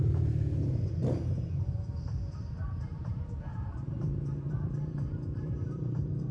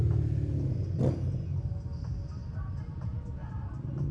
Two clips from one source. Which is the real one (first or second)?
second